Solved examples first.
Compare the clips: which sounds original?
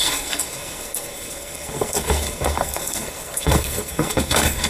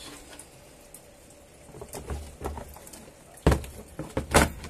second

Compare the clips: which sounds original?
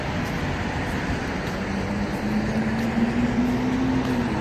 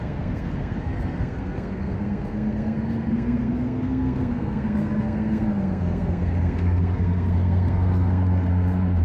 first